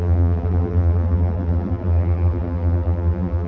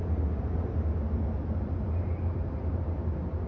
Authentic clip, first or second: second